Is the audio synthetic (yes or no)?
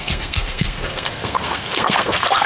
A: yes